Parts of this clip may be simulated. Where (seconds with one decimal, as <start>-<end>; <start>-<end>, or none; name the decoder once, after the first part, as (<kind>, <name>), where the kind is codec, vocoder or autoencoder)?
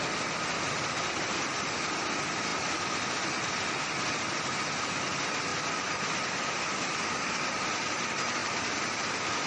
5.5-6.1 (vocoder, BigVGAN v2); 8.4-9.5